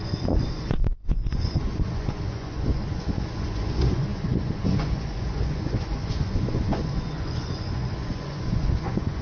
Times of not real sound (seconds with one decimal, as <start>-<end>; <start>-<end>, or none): 0.0-9.2